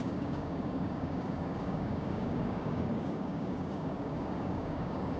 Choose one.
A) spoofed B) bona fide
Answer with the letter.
A